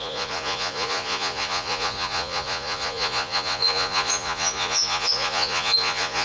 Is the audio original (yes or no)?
no